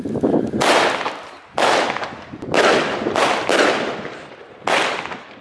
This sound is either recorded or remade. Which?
recorded